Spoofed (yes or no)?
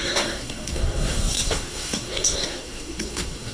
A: yes